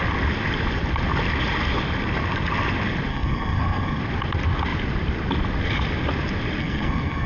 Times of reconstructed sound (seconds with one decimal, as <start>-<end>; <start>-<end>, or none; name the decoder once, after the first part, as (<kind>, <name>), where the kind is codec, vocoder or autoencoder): 3.1-4.0 (codec, SNAC); 6.6-7.3